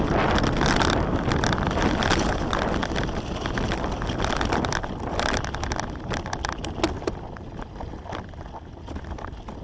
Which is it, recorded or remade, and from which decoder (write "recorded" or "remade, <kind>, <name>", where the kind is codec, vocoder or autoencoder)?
recorded